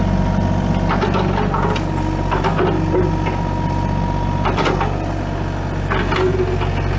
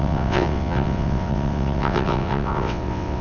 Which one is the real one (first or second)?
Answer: first